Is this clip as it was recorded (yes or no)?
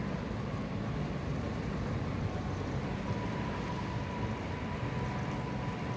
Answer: yes